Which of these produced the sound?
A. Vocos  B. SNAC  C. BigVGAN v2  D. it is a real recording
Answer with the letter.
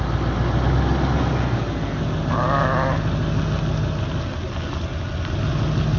D